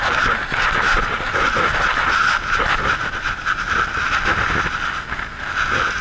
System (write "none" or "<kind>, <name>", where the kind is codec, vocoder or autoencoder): none